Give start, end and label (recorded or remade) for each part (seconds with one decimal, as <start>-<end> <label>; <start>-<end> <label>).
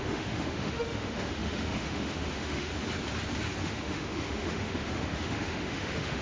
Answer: 0.0-2.7 remade; 2.7-3.6 recorded; 3.6-6.2 remade